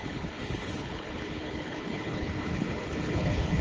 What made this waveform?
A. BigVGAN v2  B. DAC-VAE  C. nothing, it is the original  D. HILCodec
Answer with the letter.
D